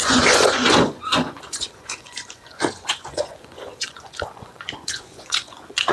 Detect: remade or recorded remade